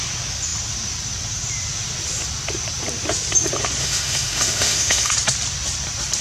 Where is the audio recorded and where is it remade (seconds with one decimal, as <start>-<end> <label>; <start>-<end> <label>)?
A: 0.0-3.8 recorded; 3.8-5.1 remade; 5.1-6.2 recorded